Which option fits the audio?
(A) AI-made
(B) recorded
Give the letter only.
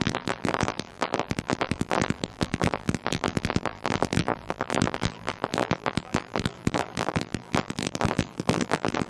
A